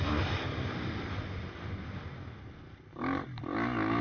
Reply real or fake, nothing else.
real